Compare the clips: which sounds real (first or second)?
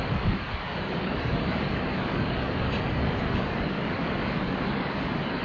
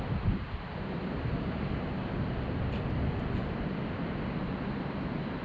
second